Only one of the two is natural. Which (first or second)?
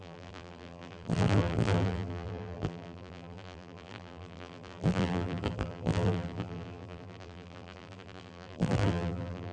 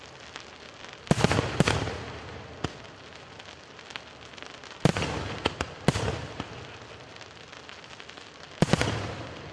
second